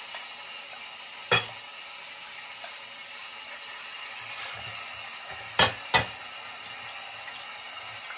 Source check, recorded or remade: recorded